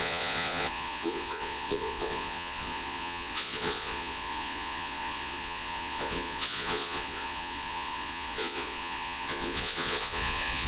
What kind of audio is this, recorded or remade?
remade